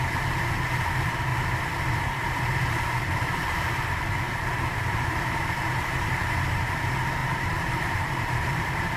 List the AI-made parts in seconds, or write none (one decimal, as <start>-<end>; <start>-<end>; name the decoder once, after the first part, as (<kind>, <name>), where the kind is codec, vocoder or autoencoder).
0.0-1.3 (vocoder, BigVGAN v2); 1.9-9.0